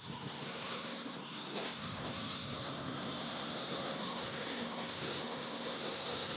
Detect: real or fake fake